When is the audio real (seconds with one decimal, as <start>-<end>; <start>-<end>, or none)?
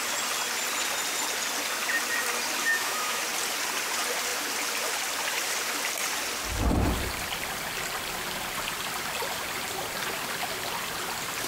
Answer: 0.0-2.6; 3.2-11.5